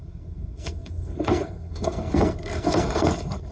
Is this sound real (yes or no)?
no